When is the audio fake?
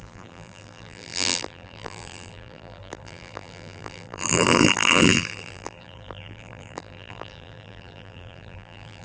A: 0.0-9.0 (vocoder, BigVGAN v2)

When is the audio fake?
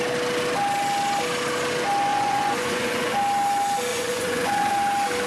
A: 2.1-3.1 (vocoder, Vocos); 3.9-4.7